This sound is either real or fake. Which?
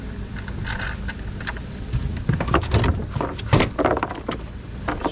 real